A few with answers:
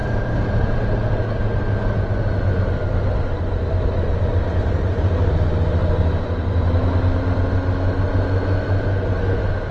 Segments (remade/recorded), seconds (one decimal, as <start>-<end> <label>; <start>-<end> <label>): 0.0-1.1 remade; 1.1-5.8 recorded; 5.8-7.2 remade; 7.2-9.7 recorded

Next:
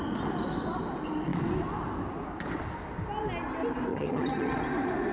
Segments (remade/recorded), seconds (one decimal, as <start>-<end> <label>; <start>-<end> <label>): 0.0-3.9 recorded; 3.9-4.5 remade; 4.5-5.1 recorded

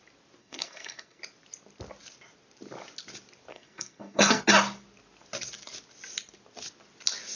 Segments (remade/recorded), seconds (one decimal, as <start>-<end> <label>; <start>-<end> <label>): 0.0-0.4 recorded; 0.4-1.2 remade; 1.2-3.5 recorded; 3.5-4.4 remade; 4.4-7.4 recorded

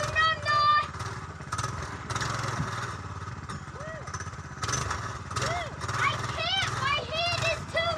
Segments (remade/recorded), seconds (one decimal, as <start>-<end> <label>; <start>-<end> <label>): 0.0-0.7 recorded; 0.7-3.3 remade; 3.3-6.1 recorded; 6.1-7.4 remade; 7.4-8.0 recorded